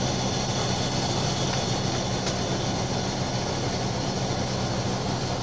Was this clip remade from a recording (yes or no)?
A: no